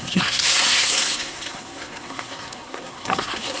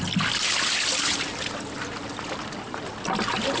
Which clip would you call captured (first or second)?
second